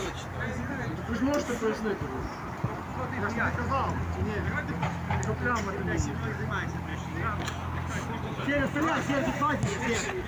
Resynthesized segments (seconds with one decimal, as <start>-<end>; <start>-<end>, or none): none

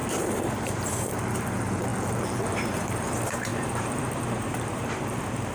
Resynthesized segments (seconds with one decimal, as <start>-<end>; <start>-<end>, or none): 0.0-1.9; 2.4-5.5